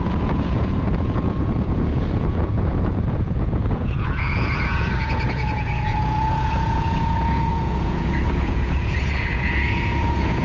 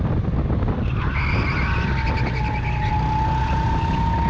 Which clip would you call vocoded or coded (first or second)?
first